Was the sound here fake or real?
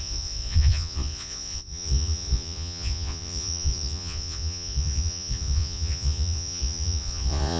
fake